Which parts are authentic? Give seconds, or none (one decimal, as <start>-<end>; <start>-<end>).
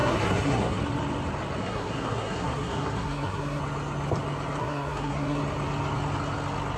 0.8-1.6; 3.6-4.6; 5.4-6.8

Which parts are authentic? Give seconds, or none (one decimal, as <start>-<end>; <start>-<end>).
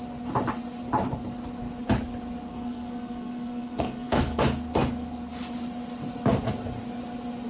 0.0-2.5; 4.4-7.5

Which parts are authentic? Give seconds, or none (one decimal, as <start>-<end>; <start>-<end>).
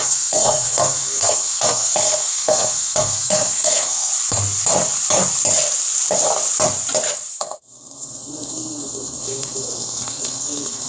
4.1-7.3